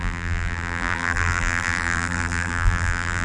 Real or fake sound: fake